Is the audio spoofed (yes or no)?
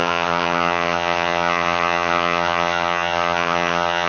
yes